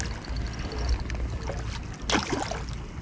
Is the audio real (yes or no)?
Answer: yes